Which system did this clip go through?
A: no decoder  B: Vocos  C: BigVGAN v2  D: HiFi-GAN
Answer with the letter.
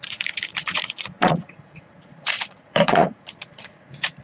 B